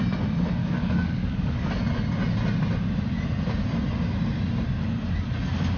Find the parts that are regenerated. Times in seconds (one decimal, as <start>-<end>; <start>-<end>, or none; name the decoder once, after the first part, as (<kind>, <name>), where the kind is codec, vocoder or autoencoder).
0.6-1.7 (codec, DAC)